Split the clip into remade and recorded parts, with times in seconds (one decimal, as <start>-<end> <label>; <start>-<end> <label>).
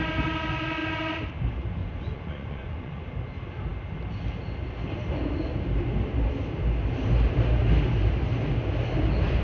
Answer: 0.0-1.8 recorded; 1.8-3.0 remade; 3.0-9.4 recorded